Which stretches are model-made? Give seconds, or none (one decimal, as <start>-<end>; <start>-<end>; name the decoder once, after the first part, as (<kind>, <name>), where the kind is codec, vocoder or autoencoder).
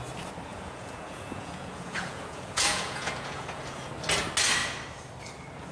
0.5-3.9 (vocoder, Vocos)